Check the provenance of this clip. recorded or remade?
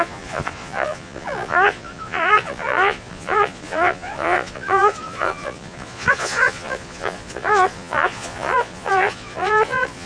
remade